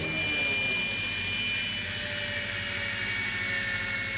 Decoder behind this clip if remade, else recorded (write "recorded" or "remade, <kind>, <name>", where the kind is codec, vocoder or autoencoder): recorded